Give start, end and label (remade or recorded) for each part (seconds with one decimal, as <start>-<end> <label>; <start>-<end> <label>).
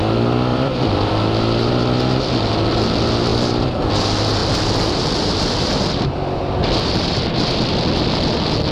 0.0-0.5 recorded; 0.5-1.1 remade; 1.1-3.3 recorded; 3.3-3.9 remade; 3.9-4.4 recorded; 4.4-7.3 remade; 7.3-8.7 recorded